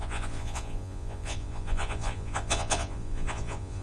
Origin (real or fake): fake